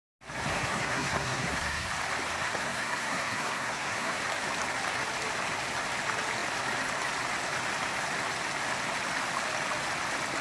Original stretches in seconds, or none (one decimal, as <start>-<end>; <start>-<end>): 0.0-0.5; 1.9-2.4; 4.2-10.4